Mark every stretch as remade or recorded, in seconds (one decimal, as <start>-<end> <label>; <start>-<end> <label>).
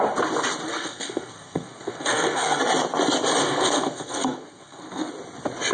0.0-0.7 recorded; 0.7-2.6 remade; 2.6-3.4 recorded; 3.4-5.1 remade; 5.1-5.7 recorded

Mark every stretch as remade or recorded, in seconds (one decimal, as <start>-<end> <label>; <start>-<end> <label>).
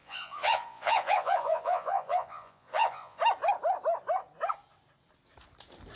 0.0-3.2 remade; 3.2-6.0 recorded